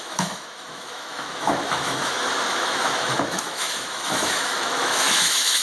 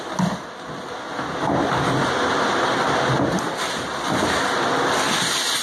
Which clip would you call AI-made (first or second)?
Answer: first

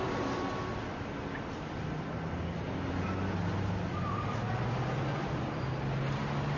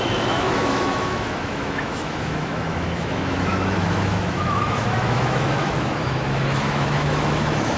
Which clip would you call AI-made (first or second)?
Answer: second